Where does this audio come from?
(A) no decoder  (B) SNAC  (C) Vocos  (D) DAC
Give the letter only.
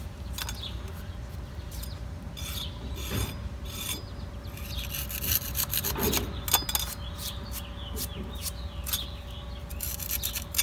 A